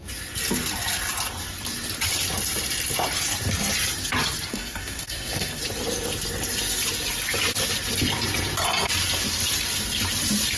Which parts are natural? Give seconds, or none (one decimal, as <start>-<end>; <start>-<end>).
0.0-4.5; 5.6-10.6